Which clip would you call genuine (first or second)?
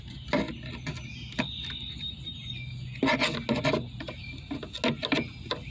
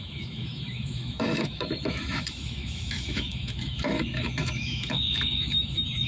first